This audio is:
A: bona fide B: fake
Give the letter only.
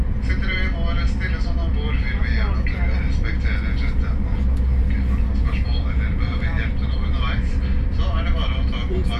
B